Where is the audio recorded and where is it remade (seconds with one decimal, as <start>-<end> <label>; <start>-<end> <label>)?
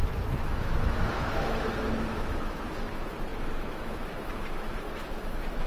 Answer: 0.0-5.7 remade